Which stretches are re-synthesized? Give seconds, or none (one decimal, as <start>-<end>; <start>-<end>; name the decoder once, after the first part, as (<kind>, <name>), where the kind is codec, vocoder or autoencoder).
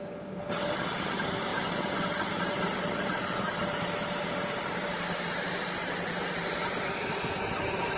none